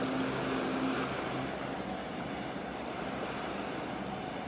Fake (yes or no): no